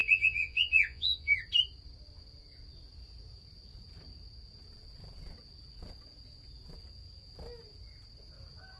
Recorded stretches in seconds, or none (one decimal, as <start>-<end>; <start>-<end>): 1.4-8.8

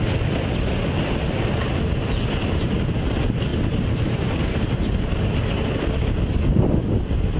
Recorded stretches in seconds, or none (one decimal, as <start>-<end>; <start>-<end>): 0.0-7.4

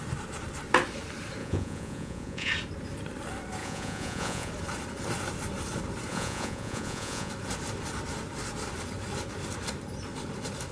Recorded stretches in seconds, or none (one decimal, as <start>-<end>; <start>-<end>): 0.0-1.4; 2.5-3.6; 4.5-6.1; 7.3-10.7

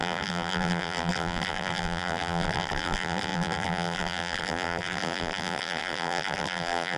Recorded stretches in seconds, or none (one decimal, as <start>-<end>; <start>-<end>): none

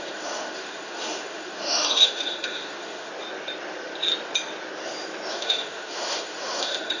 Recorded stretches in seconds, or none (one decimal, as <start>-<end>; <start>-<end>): 3.1-5.3

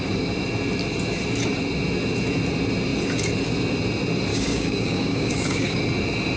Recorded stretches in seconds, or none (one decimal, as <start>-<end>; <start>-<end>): 0.0-4.3; 5.8-6.4

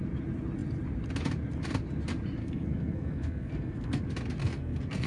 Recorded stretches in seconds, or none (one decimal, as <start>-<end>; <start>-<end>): 0.0-2.4; 4.0-4.4